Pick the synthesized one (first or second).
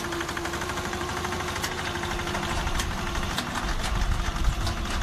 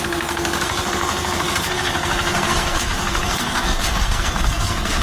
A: second